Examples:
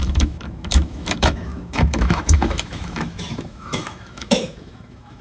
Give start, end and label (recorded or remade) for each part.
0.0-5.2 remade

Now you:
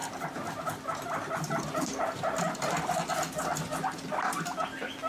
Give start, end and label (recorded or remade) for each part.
0.0-5.1 recorded

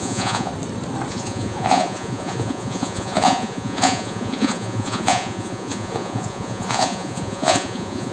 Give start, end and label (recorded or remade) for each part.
0.0-0.5 remade; 0.5-1.1 recorded; 1.1-8.1 remade

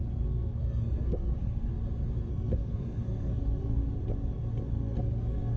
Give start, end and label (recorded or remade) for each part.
0.0-1.7 remade; 1.7-2.3 recorded; 2.3-3.8 remade; 3.8-4.7 recorded; 4.7-5.6 remade

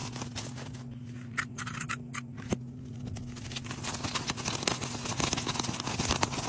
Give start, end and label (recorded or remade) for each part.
0.0-6.5 recorded

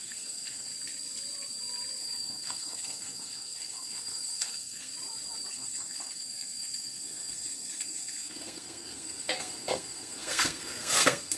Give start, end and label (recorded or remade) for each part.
0.0-0.7 remade; 0.7-2.0 recorded; 2.0-4.9 remade; 4.9-5.5 recorded; 5.5-11.4 remade

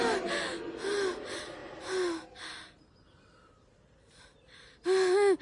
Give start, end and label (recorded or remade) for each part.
0.0-5.4 recorded